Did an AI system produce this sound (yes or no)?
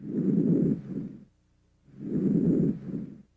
no